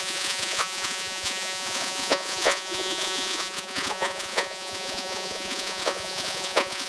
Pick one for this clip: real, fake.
fake